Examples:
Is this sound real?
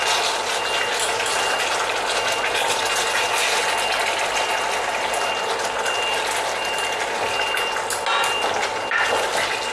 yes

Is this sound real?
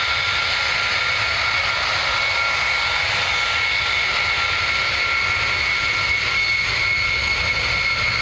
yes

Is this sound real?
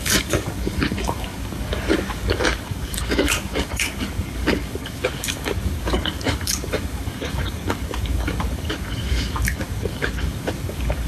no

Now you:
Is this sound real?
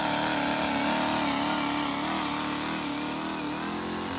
yes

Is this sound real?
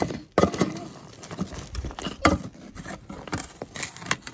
yes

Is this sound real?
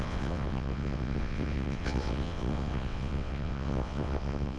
no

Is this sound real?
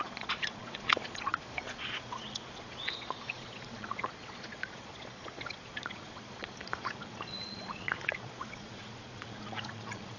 no